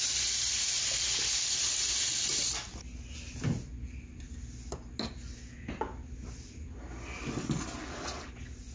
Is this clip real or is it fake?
real